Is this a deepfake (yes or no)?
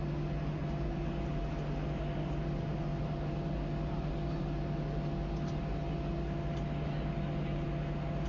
no